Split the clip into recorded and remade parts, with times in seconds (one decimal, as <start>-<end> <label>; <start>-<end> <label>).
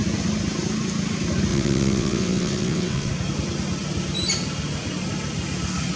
0.0-1.5 recorded; 1.5-3.1 remade; 3.1-6.0 recorded